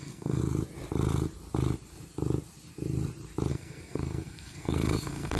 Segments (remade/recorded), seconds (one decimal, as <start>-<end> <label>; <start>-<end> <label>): 0.0-0.4 remade; 0.4-3.5 recorded; 3.5-5.4 remade